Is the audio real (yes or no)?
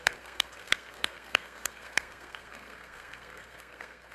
no